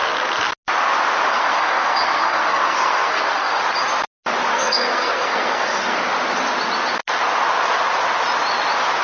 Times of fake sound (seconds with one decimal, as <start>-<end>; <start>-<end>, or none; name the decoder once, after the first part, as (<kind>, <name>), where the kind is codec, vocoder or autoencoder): 1.3-3.6 (codec, SNAC); 4.5-6.0